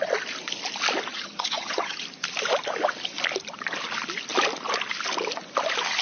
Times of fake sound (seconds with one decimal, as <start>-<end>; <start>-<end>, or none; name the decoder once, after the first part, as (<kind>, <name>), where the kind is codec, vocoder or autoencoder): 1.1-2.0 (vocoder, HiFi-GAN)